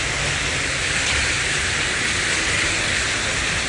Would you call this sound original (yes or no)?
yes